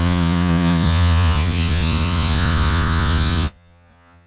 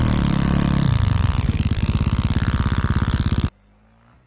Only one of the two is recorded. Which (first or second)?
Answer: second